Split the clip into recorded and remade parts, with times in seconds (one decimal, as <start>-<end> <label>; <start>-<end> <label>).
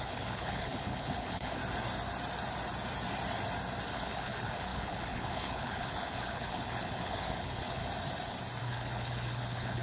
0.0-1.6 remade; 1.6-3.9 recorded; 3.9-7.8 remade; 7.8-8.6 recorded; 8.6-9.8 remade